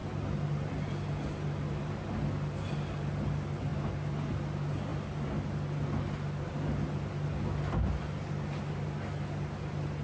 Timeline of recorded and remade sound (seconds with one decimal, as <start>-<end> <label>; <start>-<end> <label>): 0.0-10.0 recorded